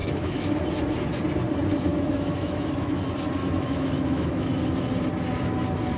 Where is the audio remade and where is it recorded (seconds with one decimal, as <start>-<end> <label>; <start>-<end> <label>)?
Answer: 0.0-0.6 remade; 0.6-1.9 recorded; 1.9-3.0 remade; 3.0-3.4 recorded; 3.4-4.5 remade; 4.5-6.0 recorded